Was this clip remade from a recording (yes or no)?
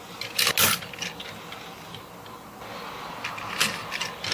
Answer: no